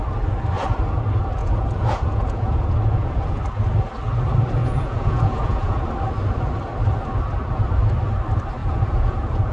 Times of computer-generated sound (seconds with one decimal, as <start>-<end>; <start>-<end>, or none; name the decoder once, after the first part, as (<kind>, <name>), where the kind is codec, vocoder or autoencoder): 1.4-3.4 (vocoder, Vocos); 4.6-5.7; 8.6-9.5